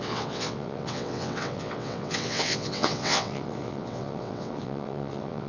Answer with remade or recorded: remade